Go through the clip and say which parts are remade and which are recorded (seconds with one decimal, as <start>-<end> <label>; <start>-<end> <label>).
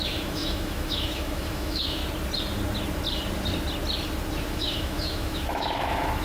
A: 0.0-2.0 remade; 2.0-4.5 recorded; 4.5-6.2 remade